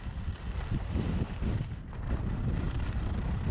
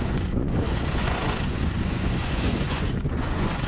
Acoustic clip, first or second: first